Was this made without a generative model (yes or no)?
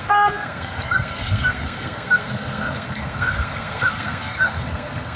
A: no